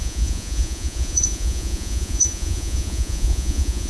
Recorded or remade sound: remade